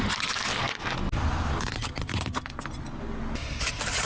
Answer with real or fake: real